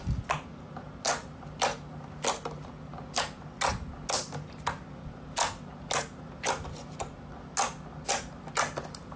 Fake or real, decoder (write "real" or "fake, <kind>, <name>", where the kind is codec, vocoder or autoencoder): real